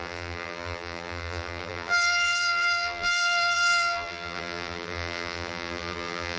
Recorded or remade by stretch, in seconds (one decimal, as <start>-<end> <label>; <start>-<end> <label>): 0.0-6.4 remade